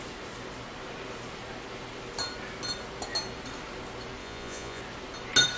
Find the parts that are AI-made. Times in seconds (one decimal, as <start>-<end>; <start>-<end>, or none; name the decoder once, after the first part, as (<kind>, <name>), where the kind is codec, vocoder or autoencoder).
4.2-4.8 (vocoder, Vocos)